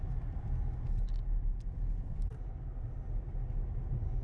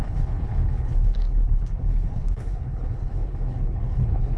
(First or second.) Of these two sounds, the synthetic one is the second